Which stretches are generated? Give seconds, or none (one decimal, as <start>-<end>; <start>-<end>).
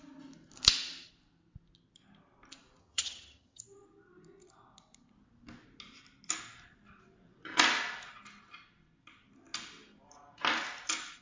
2.8-3.6